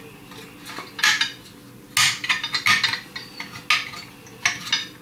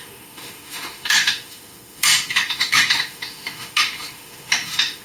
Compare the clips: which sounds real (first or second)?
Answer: first